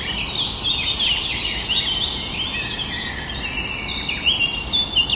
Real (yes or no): yes